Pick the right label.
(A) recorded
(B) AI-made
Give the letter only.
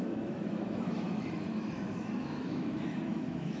B